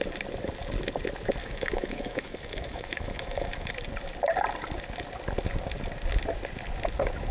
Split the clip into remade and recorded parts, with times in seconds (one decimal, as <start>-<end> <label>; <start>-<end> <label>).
0.0-1.4 recorded; 1.4-3.7 remade; 3.7-7.3 recorded